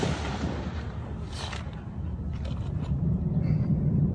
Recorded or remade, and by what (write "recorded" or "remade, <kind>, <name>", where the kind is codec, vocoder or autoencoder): remade, vocoder, BigVGAN v2